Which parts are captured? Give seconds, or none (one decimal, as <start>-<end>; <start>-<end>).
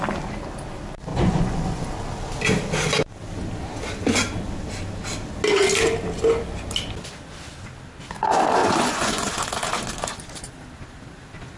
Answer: 0.0-1.1; 1.8-8.6; 9.3-11.6